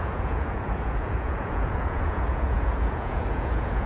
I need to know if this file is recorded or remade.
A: remade